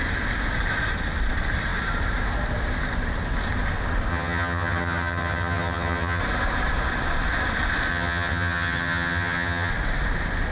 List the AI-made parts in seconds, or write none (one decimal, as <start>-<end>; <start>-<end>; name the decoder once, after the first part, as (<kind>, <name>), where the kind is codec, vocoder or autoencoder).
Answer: 4.1-6.2 (vocoder, HiFi-GAN); 7.9-9.7